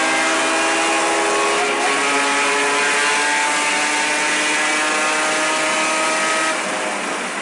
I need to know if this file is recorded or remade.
recorded